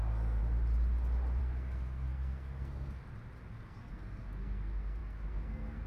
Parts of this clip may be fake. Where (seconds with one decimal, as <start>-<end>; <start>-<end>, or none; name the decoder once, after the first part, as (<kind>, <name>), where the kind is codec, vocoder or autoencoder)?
0.0-0.4 (codec, SNAC); 1.4-3.0; 3.5-5.9